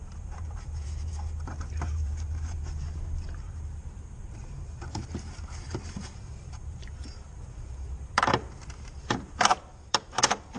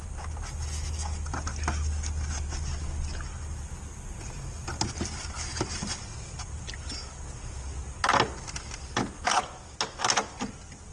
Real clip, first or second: second